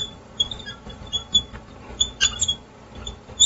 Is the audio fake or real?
fake